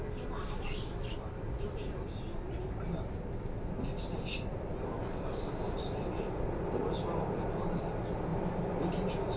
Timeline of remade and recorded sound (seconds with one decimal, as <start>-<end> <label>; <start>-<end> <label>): 0.0-9.4 recorded